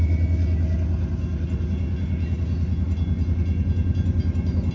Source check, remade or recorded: recorded